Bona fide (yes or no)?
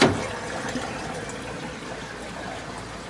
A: no